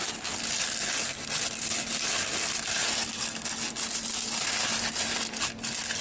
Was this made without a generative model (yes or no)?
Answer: yes